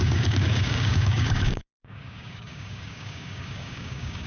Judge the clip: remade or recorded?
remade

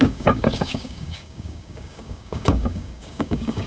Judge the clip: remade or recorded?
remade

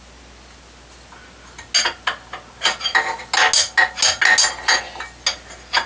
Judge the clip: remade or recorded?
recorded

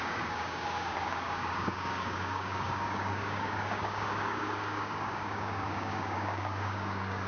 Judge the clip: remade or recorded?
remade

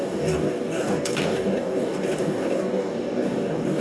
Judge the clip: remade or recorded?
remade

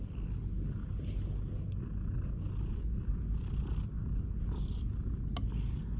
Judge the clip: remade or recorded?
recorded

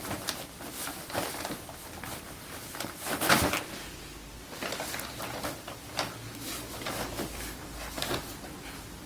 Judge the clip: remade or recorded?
recorded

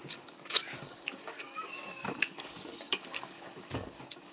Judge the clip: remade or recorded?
remade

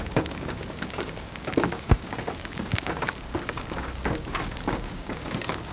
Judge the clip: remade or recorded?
remade